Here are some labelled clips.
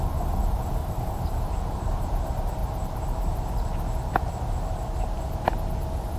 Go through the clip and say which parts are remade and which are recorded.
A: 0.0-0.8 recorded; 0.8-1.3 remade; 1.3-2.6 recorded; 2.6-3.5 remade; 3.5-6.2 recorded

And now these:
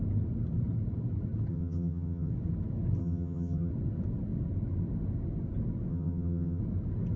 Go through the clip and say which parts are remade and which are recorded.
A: 0.0-1.5 recorded; 1.5-2.3 remade; 2.3-3.0 recorded; 3.0-3.7 remade; 3.7-5.9 recorded; 5.9-6.6 remade; 6.6-7.2 recorded

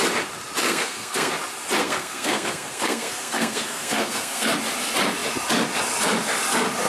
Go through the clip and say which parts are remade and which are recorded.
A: 0.0-0.6 recorded; 0.6-1.3 remade; 1.3-1.8 recorded; 1.8-4.5 remade; 4.5-6.9 recorded

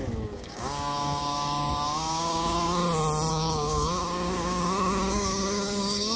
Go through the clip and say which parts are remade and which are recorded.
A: 0.0-2.8 remade; 2.8-3.3 recorded; 3.3-6.2 remade

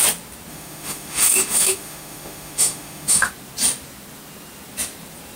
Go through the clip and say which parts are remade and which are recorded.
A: 0.0-0.5 recorded; 0.5-3.3 remade; 3.3-5.4 recorded

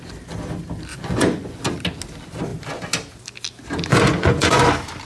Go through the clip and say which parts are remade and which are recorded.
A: 0.0-0.9 recorded; 0.9-1.6 remade; 1.6-3.9 recorded; 3.9-4.6 remade; 4.6-5.0 recorded

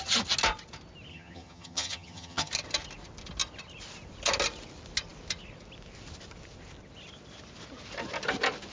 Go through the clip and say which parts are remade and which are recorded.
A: 0.0-1.1 recorded; 1.1-2.5 remade; 2.5-8.7 recorded

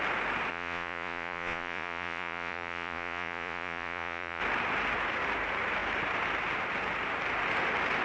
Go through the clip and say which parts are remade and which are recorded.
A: 0.0-0.5 recorded; 0.5-4.4 remade; 4.4-8.0 recorded